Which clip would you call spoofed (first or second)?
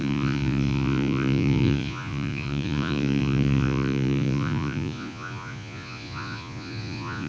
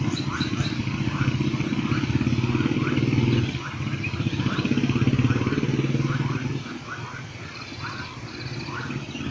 first